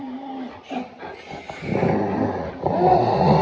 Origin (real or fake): real